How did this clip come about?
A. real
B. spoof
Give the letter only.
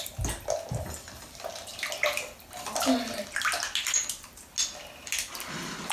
A